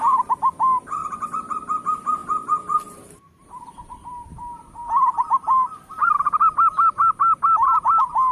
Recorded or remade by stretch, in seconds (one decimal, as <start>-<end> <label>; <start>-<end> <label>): 0.0-2.2 recorded; 2.2-6.4 remade; 6.4-8.3 recorded